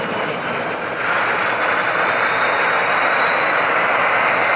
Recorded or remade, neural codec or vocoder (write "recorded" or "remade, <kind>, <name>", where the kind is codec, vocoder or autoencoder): recorded